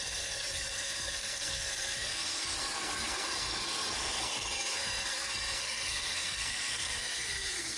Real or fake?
fake